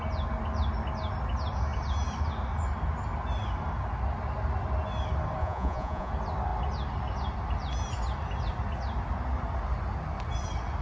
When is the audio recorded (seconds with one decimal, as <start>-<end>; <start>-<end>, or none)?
0.0-5.4; 6.1-10.8